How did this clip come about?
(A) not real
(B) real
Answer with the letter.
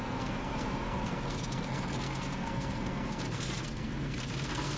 A